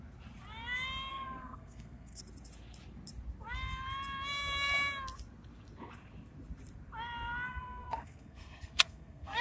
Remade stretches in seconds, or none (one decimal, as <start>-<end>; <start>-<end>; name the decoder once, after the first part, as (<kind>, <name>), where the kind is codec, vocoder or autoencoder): 1.1-2.2 (codec, SNAC); 7.5-9.4